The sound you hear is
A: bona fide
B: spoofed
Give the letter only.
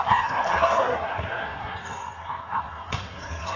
B